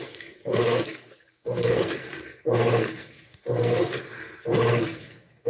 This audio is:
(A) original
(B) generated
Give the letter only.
B